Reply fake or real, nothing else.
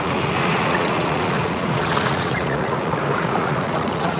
fake